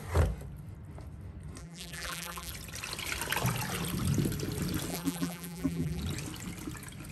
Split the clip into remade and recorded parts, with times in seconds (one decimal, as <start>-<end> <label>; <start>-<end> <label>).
0.0-1.6 recorded; 1.6-2.5 remade; 2.5-4.9 recorded; 4.9-6.0 remade; 6.0-7.1 recorded